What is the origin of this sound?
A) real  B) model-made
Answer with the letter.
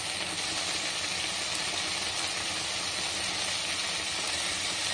A